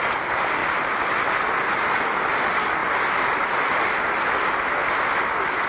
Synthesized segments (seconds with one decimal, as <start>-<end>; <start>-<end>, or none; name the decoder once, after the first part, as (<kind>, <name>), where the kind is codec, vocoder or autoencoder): none